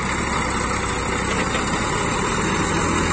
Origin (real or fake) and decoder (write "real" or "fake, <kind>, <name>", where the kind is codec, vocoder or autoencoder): real